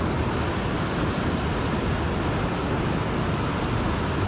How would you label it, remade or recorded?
recorded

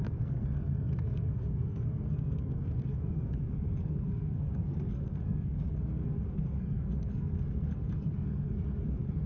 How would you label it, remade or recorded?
remade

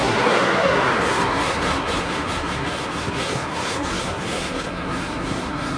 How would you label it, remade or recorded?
remade